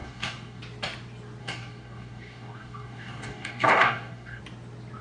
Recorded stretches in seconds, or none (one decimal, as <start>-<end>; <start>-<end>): 0.6-1.4; 4.4-5.0